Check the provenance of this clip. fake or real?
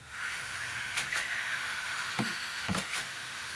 fake